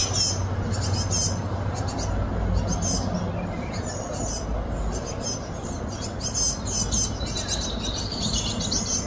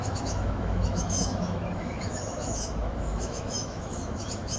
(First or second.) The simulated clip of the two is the second